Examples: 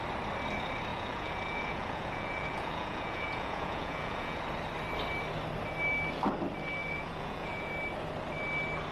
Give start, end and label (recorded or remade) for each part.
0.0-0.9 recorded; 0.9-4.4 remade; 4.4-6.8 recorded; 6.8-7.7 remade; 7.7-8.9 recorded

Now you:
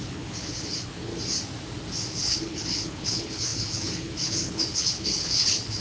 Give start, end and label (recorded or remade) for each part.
0.0-1.1 remade; 1.1-2.1 recorded; 2.1-5.8 remade